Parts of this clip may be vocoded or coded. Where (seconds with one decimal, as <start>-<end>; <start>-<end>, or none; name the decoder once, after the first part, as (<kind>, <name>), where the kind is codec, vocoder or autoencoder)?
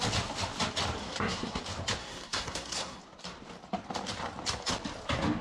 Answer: 1.0-1.6 (codec, SNAC); 2.0-3.0